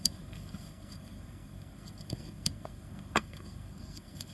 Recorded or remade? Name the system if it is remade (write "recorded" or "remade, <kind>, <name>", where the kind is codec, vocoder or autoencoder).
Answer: remade, codec, SNAC